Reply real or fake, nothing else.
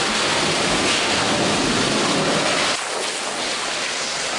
real